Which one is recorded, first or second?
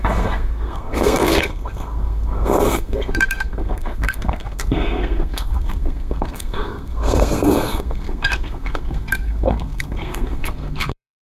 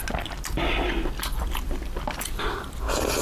second